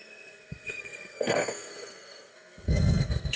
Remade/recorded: remade